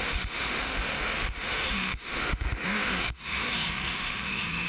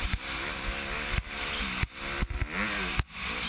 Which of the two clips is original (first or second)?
second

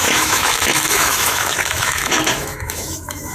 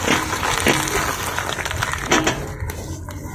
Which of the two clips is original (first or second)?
second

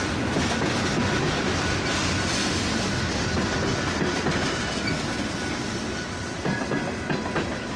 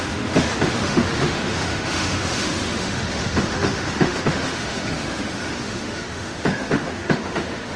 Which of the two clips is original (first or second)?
first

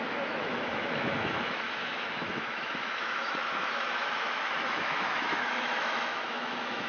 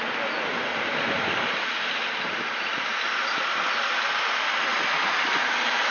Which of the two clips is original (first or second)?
second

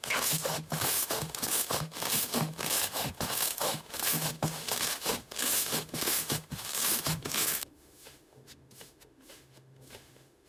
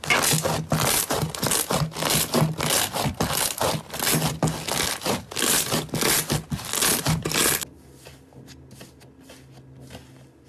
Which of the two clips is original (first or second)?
second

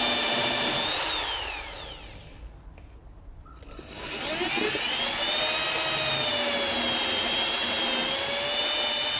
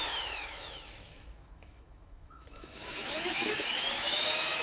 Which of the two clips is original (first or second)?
first